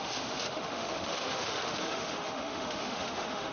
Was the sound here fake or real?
fake